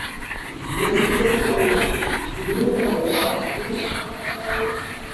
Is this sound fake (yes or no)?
no